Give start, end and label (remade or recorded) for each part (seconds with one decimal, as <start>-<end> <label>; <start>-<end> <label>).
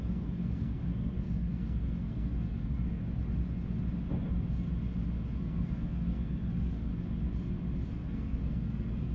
0.0-3.0 remade; 3.0-5.4 recorded; 5.4-6.9 remade; 6.9-7.9 recorded; 7.9-9.1 remade